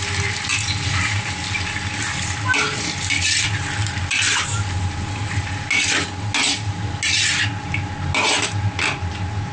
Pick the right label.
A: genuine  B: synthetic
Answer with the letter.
A